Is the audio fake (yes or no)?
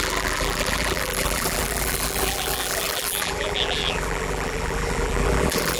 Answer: yes